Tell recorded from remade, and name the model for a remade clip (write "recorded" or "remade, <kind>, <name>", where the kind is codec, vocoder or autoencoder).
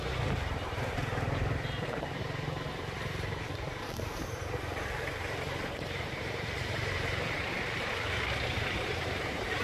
remade, vocoder, BigVGAN v2